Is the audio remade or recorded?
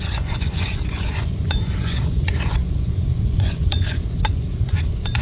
remade